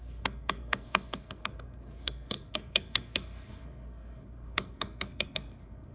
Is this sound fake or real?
fake